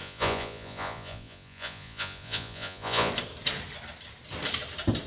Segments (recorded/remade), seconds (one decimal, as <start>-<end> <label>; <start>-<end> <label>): 0.0-3.1 remade; 3.1-5.1 recorded